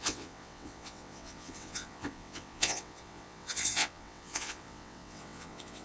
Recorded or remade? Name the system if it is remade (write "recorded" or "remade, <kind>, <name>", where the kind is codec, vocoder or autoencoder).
remade, vocoder, WaveNeXt